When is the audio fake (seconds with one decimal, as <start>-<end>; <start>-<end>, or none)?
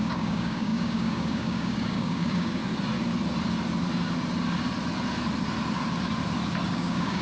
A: 0.0-2.6; 6.7-7.2